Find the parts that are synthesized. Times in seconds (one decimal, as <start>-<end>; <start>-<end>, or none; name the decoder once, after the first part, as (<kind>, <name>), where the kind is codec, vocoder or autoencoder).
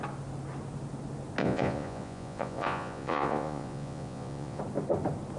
1.4-4.6 (vocoder, Vocos)